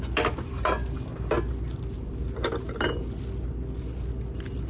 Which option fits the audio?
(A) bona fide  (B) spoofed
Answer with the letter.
A